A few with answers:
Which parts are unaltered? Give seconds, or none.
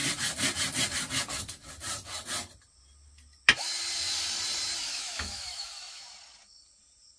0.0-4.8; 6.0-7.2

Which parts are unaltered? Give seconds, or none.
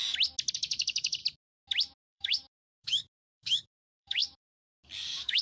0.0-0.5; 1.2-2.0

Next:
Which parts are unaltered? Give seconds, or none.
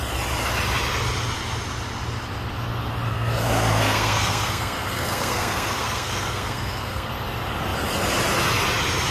0.0-3.1; 7.1-9.1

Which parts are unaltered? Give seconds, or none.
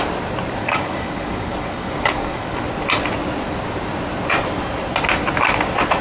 0.0-0.6; 2.6-6.0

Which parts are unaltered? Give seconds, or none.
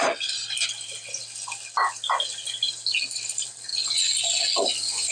0.4-3.1; 3.7-5.1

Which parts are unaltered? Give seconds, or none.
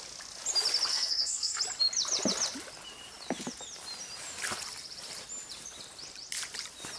0.0-0.9; 1.6-7.0